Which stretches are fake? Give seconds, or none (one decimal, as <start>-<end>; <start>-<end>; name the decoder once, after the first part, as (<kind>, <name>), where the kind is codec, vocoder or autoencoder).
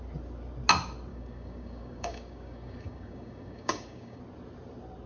1.1-4.2 (codec, DAC)